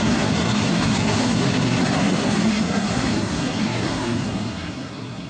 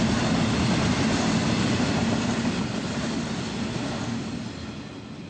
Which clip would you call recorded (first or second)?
second